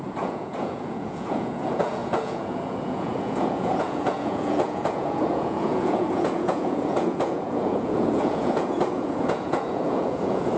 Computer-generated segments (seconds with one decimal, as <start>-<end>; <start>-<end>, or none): 0.0-10.6